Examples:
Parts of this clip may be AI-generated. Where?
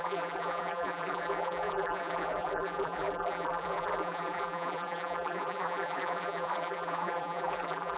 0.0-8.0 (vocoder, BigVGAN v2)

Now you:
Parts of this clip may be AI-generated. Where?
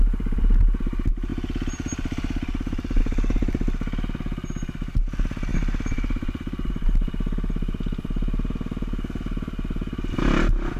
none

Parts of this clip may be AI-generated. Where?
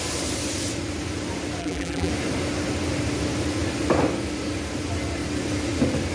1.6-2.1 (vocoder, BigVGAN v2)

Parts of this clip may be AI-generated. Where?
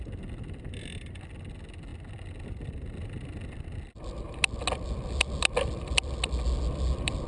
none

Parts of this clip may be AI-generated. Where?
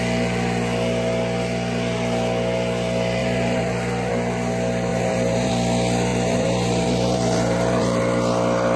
3.2-4.1 (vocoder, BigVGAN v2); 4.9-5.5; 6.1-8.0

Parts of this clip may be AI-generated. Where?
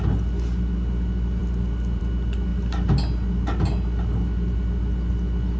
none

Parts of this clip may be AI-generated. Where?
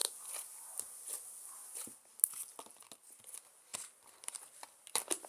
3.2-3.7 (vocoder, BigVGAN v2); 4.3-5.3